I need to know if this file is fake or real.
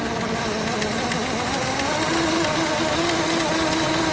real